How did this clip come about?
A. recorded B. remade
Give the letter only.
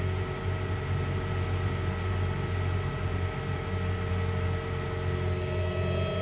A